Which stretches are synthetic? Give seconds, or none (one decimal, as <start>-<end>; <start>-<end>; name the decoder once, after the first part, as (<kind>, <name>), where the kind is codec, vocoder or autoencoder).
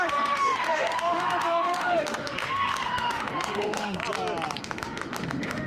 0.0-4.0 (autoencoder, DAC-VAE); 4.6-5.7